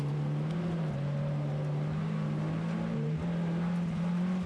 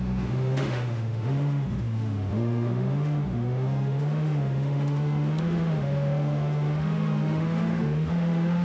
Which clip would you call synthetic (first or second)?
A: second